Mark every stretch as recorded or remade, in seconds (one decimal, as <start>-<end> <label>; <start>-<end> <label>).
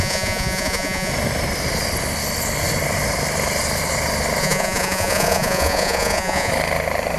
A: 0.0-1.1 remade; 1.1-4.4 recorded; 4.4-6.5 remade; 6.5-7.2 recorded